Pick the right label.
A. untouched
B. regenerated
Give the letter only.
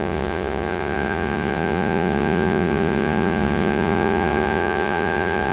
B